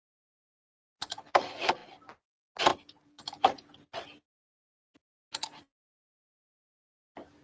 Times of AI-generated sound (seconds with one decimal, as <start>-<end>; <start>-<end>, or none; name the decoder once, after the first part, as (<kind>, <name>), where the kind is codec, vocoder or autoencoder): 1.8-2.3 (vocoder, BigVGAN v2); 2.7-3.2

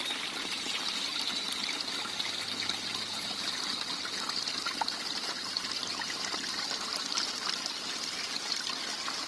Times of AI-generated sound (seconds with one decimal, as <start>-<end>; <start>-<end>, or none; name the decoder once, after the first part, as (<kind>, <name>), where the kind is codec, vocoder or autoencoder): none

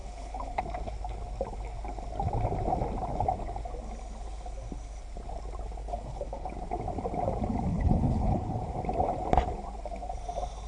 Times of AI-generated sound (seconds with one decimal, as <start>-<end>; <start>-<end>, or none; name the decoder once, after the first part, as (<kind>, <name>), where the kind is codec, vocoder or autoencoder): 0.0-0.6 (codec, HILCodec); 5.8-6.5; 7.7-8.6

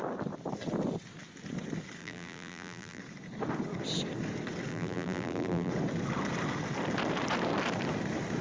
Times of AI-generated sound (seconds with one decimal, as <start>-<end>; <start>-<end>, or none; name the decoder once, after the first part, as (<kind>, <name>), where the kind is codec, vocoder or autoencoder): 2.0-3.0 (vocoder, BigVGAN v2); 4.7-5.7

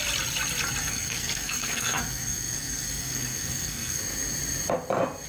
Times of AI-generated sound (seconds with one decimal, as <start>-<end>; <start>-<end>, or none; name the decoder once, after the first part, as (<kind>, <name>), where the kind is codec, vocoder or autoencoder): 0.8-4.0 (codec, SNAC)